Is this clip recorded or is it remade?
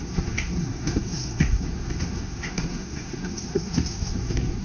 remade